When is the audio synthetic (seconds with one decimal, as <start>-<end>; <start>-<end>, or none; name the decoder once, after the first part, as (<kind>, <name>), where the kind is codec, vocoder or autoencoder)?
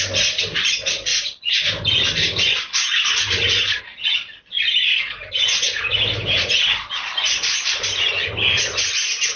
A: none